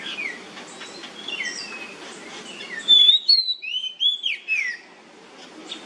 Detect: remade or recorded recorded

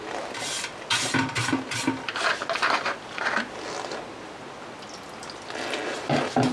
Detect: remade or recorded recorded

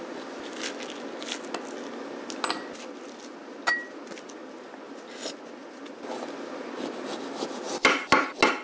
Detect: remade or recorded recorded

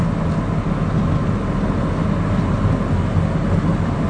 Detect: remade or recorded recorded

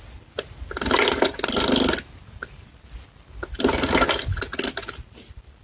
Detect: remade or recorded recorded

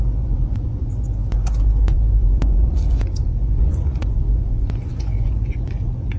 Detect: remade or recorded remade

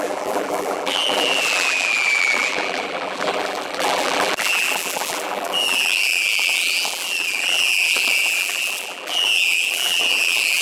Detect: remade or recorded remade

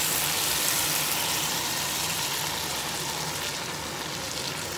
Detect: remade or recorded recorded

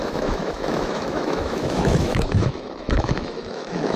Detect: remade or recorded remade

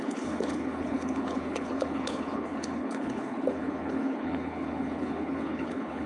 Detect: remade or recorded remade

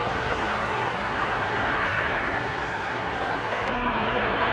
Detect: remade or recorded remade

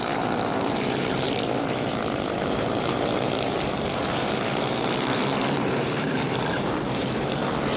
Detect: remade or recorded remade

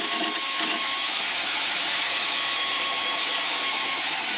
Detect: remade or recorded remade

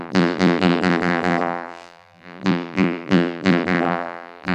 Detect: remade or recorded remade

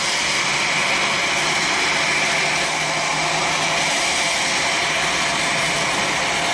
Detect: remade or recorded recorded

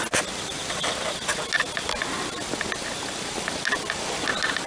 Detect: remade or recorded recorded